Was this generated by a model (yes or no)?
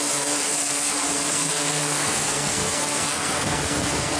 yes